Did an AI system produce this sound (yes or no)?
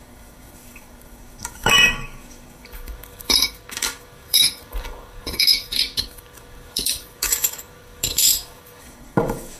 yes